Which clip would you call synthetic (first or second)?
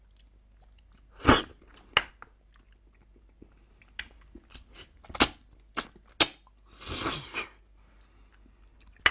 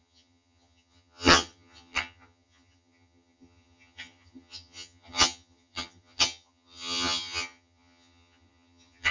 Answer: second